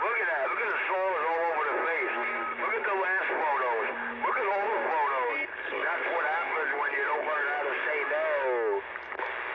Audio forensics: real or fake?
real